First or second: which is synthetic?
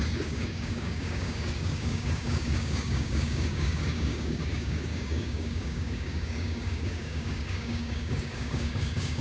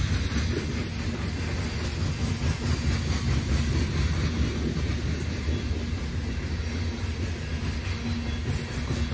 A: first